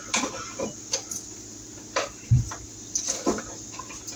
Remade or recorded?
recorded